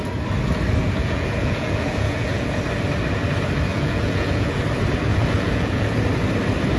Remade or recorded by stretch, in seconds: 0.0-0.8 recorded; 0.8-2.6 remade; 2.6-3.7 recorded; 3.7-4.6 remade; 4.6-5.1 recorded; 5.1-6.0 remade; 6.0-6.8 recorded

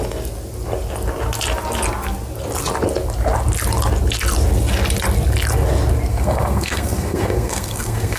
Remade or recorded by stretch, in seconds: 0.0-6.1 recorded; 6.1-8.2 remade

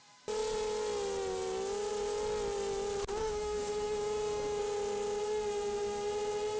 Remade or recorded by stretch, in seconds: 0.0-3.2 recorded; 3.2-4.6 remade; 4.6-6.6 recorded

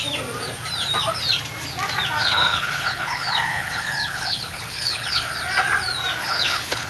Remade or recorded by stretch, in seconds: 0.0-2.2 recorded; 2.2-5.3 remade; 5.3-6.2 recorded; 6.2-6.9 remade

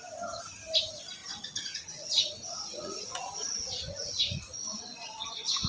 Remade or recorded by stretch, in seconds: 0.0-1.2 recorded; 1.2-4.6 remade; 4.6-5.7 recorded

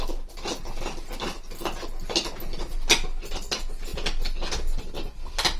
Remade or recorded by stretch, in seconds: 0.0-5.6 recorded

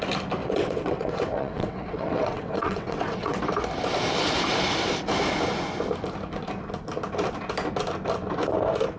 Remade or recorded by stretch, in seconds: 0.0-0.4 recorded; 0.4-3.4 remade; 3.4-9.0 recorded

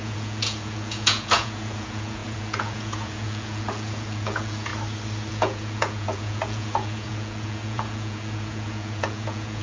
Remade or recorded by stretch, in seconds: 0.0-4.7 remade; 4.7-5.3 recorded; 5.3-9.6 remade